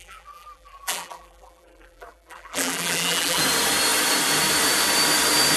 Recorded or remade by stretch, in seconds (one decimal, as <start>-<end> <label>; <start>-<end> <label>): 0.0-3.4 remade; 3.4-5.6 recorded